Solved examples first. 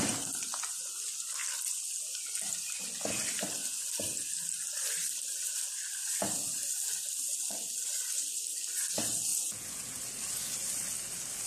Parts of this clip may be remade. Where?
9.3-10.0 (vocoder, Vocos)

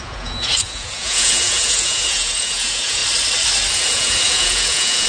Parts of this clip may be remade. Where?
0.0-3.0 (vocoder, Vocos); 3.7-5.1

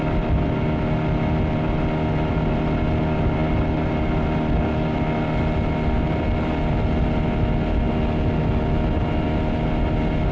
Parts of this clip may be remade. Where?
none

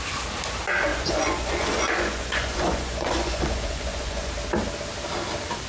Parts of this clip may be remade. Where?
0.9-4.3 (vocoder, Vocos)